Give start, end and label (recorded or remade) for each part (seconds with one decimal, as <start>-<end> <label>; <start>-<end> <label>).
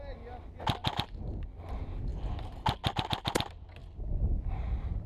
0.0-5.1 recorded